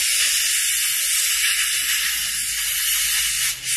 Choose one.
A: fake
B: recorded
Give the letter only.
B